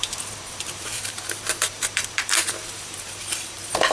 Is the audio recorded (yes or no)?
no